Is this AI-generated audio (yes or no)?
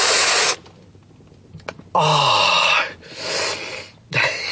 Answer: no